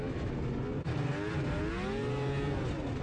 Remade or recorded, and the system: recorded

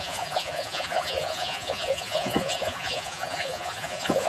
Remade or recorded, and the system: remade, vocoder, Vocos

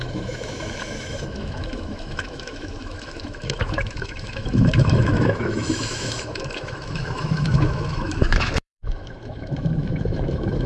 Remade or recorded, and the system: remade, autoencoder, DAC-VAE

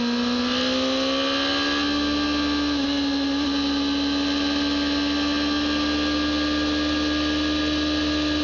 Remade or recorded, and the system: recorded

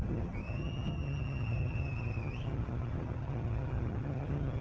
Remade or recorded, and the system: remade, vocoder, HiFi-GAN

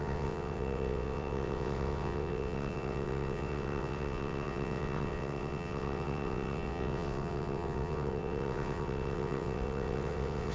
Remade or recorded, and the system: remade, vocoder, WaveNeXt